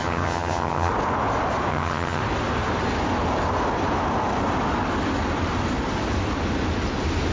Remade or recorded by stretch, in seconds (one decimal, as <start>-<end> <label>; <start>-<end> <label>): 0.0-0.9 remade; 0.9-1.7 recorded; 1.7-2.2 remade; 2.2-7.3 recorded